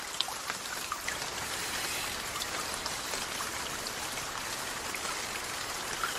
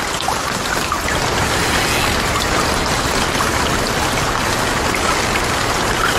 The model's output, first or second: first